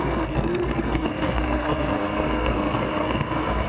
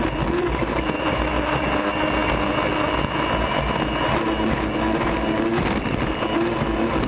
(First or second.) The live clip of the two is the second